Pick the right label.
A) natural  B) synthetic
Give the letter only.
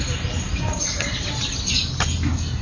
A